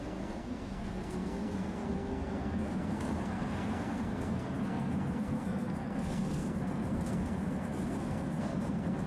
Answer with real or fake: fake